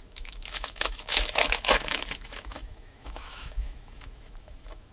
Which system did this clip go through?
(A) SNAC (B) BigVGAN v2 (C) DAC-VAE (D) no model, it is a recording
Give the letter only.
C